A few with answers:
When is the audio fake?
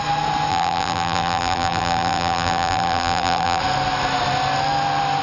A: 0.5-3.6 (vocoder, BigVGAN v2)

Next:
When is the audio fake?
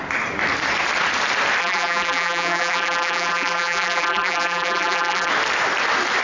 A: 1.6-5.3 (vocoder, BigVGAN v2)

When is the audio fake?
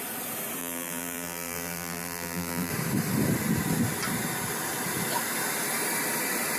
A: 0.6-2.7 (vocoder, BigVGAN v2)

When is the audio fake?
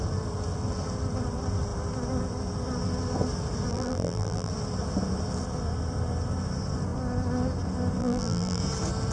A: 3.7-4.5 (vocoder, BigVGAN v2); 8.0-8.6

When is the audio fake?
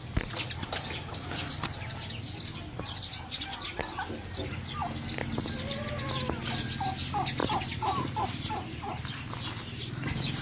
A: 7.4-8.7 (vocoder, BigVGAN v2)